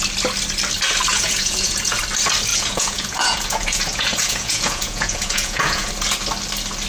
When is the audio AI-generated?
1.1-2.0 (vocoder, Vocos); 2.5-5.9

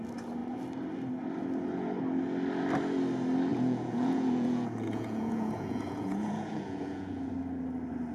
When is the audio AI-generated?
3.5-7.3 (vocoder, Vocos)

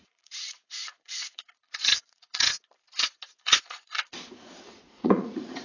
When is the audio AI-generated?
0.0-2.5 (vocoder, Vocos); 3.4-5.6

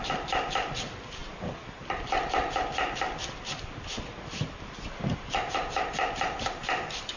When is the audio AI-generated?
none

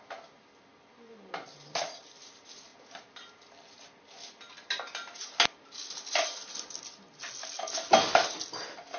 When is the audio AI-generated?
none

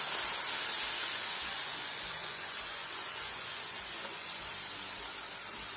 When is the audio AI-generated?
1.0-4.5 (vocoder, Vocos)

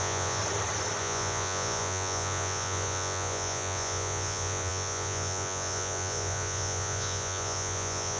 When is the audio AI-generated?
0.0-0.4 (vocoder, Vocos); 1.0-8.2